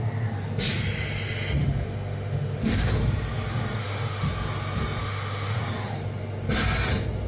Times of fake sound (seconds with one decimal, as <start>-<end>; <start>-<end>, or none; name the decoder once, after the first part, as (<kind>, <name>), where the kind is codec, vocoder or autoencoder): 1.6-2.9 (autoencoder, DAC-VAE); 3.8-4.3; 5.0-5.6